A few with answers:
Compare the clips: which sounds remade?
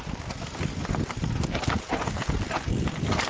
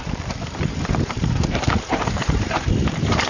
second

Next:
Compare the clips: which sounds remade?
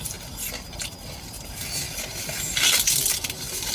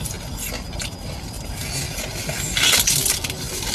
first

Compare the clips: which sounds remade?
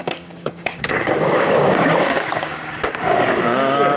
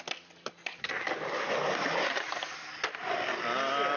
first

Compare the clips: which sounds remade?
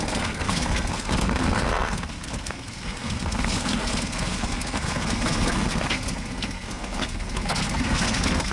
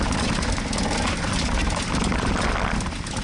first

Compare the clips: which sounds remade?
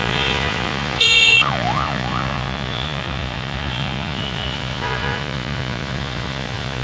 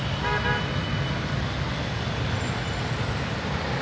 first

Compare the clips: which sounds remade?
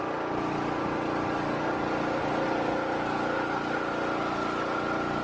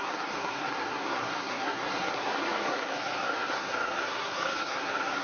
second